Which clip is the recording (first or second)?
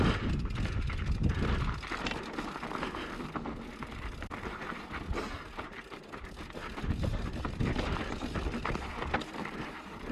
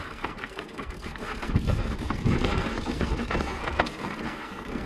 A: first